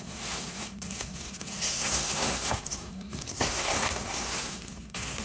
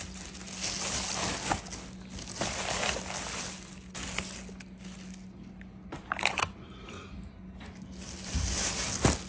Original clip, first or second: second